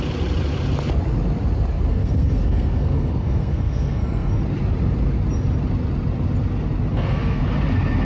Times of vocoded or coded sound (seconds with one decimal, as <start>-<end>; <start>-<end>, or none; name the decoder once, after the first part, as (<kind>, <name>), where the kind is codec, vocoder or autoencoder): 1.9-4.4 (codec, SNAC); 6.9-7.4